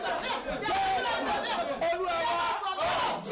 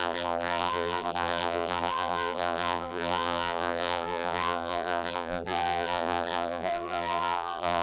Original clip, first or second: first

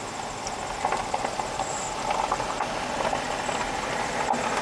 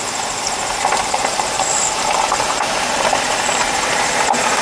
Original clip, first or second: first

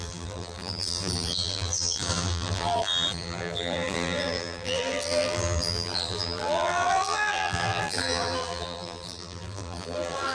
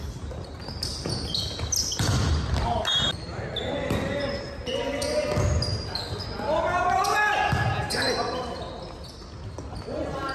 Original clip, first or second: second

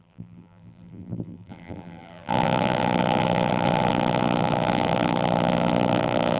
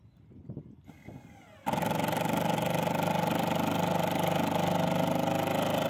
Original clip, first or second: second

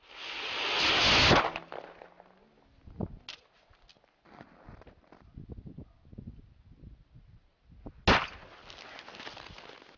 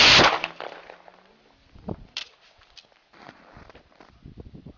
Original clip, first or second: first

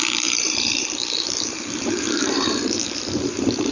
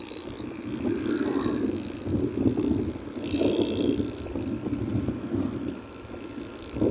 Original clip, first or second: second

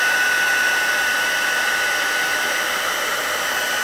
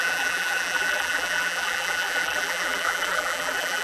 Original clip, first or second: first